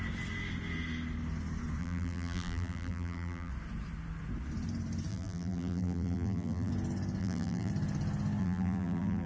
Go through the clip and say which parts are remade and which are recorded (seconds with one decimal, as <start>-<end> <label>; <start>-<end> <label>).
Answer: 0.0-1.8 recorded; 1.8-3.5 remade; 3.5-5.1 recorded; 5.1-6.7 remade; 6.7-7.2 recorded; 7.2-7.7 remade; 7.7-8.4 recorded; 8.4-9.3 remade